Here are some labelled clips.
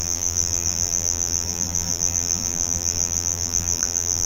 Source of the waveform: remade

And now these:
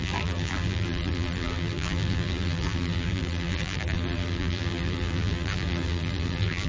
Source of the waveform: remade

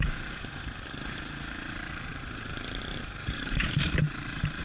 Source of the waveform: remade